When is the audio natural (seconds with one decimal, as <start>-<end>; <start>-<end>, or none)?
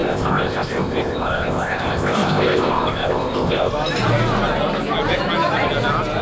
3.7-6.2